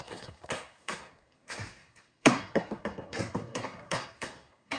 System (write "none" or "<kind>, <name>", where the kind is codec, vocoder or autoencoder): codec, SNAC